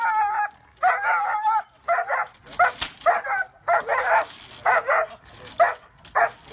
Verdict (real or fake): real